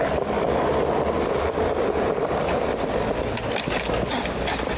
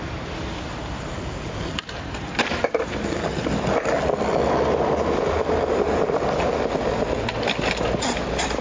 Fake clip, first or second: first